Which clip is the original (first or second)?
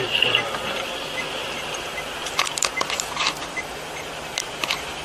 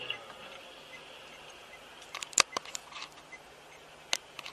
second